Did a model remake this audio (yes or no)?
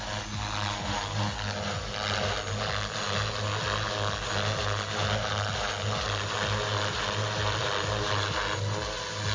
no